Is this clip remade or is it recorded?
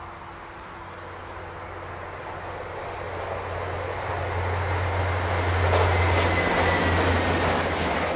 recorded